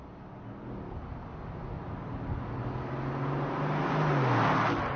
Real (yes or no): yes